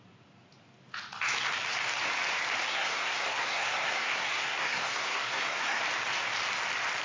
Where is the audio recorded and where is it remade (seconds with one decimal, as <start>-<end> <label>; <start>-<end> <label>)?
0.0-2.7 recorded; 2.7-5.8 remade; 5.8-7.0 recorded